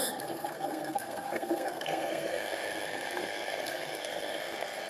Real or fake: fake